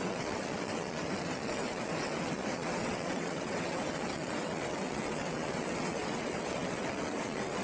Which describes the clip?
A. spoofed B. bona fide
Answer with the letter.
A